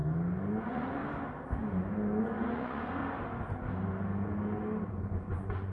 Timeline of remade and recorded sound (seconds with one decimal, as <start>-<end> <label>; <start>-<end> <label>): 0.0-0.6 recorded; 0.6-1.0 remade; 1.0-2.2 recorded; 2.2-3.0 remade; 3.0-4.9 recorded; 4.9-5.7 remade

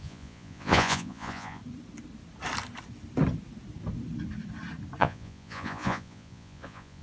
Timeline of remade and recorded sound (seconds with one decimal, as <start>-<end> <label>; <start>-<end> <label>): 0.0-1.6 remade; 1.6-5.0 recorded; 5.0-7.0 remade